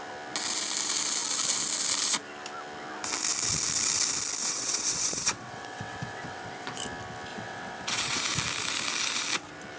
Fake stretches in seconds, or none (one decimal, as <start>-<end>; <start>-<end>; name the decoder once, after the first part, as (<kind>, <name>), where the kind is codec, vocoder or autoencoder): 4.4-6.8 (vocoder, WaveNeXt); 7.3-8.2